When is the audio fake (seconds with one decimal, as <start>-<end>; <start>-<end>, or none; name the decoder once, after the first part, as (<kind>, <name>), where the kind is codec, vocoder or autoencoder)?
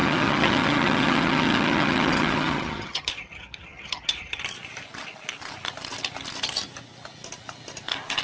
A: 0.0-4.4 (vocoder, HiFi-GAN)